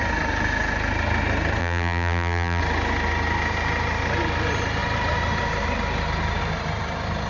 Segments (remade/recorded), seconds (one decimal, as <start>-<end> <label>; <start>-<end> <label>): 0.0-1.6 recorded; 1.6-2.6 remade; 2.6-7.3 recorded